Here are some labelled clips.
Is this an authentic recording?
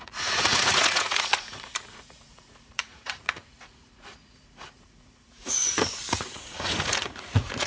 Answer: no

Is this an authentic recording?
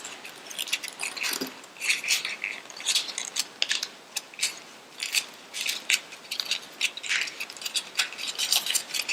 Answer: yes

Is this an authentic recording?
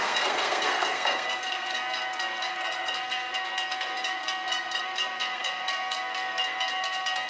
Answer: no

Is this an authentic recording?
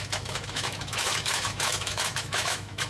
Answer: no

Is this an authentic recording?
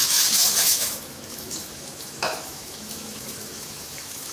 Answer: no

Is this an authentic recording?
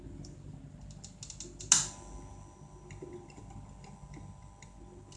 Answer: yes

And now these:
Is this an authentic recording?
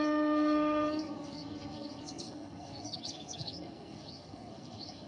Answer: no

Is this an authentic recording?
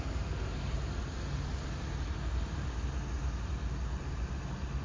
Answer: yes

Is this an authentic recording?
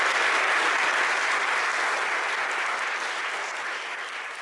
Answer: yes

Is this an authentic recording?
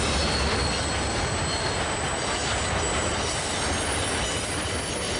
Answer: yes